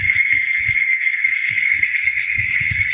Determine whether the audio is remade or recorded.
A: remade